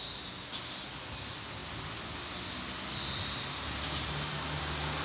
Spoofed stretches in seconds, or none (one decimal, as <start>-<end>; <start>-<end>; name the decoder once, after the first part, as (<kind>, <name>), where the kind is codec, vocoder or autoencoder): none